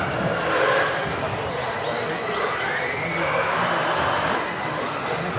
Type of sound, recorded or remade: recorded